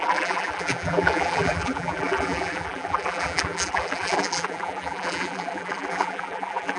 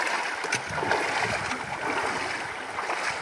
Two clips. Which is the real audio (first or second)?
second